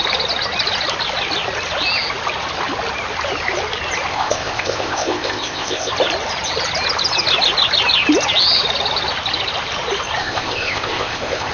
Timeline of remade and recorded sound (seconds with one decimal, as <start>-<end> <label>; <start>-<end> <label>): 0.0-4.1 recorded; 4.1-5.9 remade; 5.9-10.2 recorded; 10.2-11.5 remade